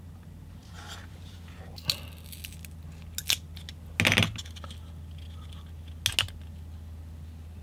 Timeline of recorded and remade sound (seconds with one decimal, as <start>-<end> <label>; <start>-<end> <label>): 0.0-0.6 recorded; 0.6-1.6 remade; 1.6-7.6 recorded